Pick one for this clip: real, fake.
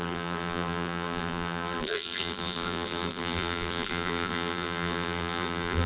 fake